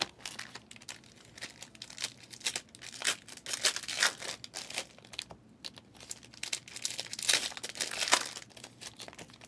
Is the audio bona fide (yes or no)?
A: yes